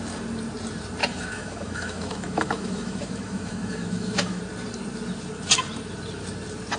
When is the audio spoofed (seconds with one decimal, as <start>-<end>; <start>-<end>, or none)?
1.0-4.4